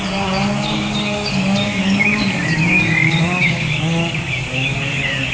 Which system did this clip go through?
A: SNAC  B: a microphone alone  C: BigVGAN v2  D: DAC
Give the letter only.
D